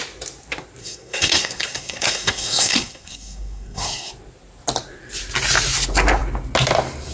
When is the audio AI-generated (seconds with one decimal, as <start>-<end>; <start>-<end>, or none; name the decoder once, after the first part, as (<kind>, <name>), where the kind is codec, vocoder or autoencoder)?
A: 0.8-4.1 (codec, SNAC)